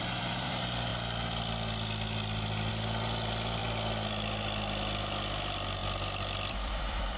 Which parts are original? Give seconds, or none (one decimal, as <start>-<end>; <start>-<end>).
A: 3.6-5.0